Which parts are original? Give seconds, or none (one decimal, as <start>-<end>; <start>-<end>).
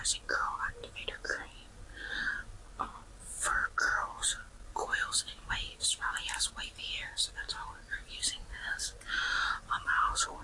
0.0-4.9; 6.0-7.9; 8.9-10.4